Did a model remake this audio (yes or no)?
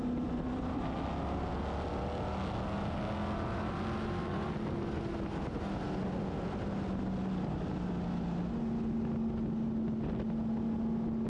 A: no